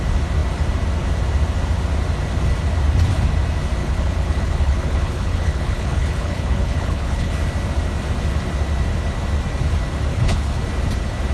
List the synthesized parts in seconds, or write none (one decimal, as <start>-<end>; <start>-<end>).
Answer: 3.8-7.3; 10.1-10.6